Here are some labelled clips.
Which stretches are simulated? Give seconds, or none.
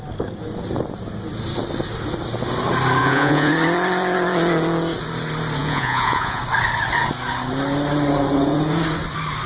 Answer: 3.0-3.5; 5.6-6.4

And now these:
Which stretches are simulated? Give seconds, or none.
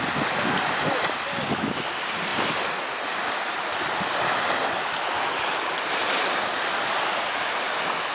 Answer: none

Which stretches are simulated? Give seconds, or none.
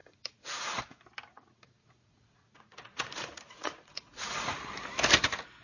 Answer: 0.0-0.8; 1.3-4.7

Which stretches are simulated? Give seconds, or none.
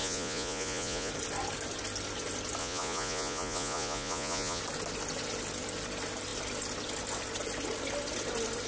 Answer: 0.0-1.1; 2.6-4.6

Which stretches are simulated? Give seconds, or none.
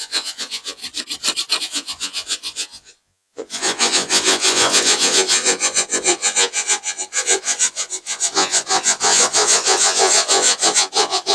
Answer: 0.0-0.8; 1.6-11.3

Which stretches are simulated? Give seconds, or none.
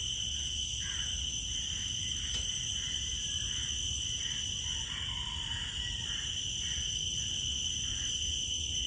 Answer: 7.9-8.9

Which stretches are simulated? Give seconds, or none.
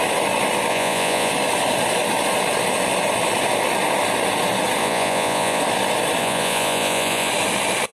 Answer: 0.7-1.3; 4.8-5.6; 6.2-7.3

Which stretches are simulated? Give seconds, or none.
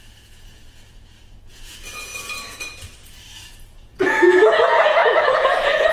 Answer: 0.0-2.1; 3.5-5.9